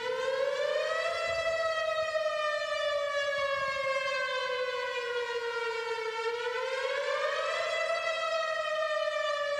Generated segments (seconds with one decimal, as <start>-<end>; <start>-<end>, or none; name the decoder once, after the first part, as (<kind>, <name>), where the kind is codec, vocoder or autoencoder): 4.4-5.9 (vocoder, Vocos)